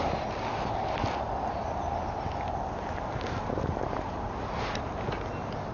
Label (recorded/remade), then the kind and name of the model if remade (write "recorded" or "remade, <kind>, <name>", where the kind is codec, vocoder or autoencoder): recorded